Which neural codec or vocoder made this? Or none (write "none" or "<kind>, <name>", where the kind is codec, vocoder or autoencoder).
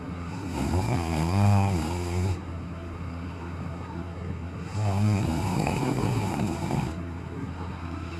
codec, SNAC